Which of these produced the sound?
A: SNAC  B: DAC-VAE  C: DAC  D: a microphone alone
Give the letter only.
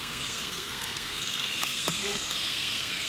A